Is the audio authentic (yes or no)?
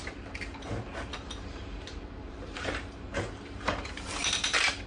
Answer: no